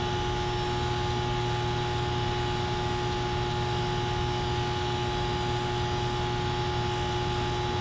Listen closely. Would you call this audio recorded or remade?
recorded